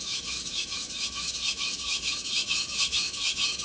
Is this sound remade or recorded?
remade